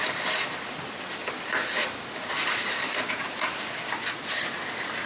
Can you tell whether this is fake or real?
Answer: real